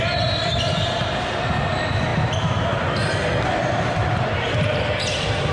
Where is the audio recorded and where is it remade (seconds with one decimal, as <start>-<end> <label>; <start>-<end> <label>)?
0.0-5.5 recorded

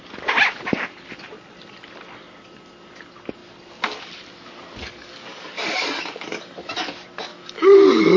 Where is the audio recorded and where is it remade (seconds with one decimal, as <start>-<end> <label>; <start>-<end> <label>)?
0.0-4.8 recorded; 4.8-6.7 remade; 6.7-7.3 recorded; 7.3-8.2 remade

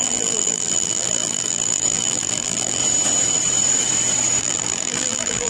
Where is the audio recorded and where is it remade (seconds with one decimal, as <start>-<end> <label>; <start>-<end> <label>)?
0.0-2.8 remade; 2.8-4.4 recorded; 4.4-5.5 remade

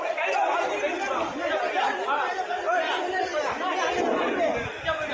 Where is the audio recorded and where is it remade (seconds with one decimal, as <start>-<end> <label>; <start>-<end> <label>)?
0.0-5.1 recorded

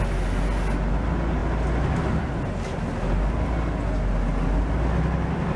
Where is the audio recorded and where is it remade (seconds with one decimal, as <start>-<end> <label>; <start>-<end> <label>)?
0.0-5.6 recorded

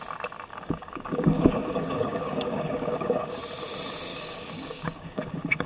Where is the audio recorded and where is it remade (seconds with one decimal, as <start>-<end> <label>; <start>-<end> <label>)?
0.0-0.5 recorded; 0.5-3.4 remade; 3.4-4.1 recorded; 4.1-5.7 remade

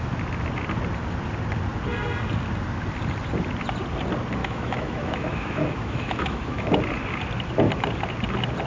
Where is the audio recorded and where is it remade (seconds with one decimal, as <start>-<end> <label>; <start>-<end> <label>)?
0.0-4.4 recorded; 4.4-6.8 remade; 6.8-8.7 recorded

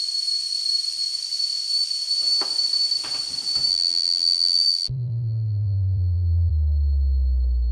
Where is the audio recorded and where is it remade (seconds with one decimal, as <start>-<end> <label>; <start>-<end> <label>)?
0.0-3.7 recorded; 3.7-6.5 remade; 6.5-7.7 recorded